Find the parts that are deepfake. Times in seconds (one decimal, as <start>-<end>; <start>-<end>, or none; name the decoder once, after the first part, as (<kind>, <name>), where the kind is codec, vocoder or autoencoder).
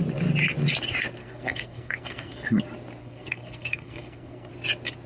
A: 1.2-2.6 (codec, SNAC); 3.0-4.5